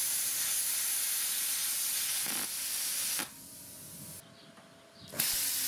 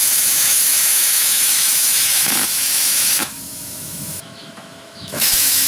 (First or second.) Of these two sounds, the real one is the first